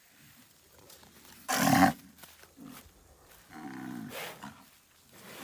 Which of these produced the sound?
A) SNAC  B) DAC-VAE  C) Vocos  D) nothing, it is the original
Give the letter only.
D